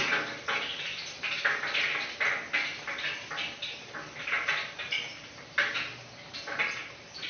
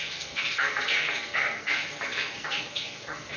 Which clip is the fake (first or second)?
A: second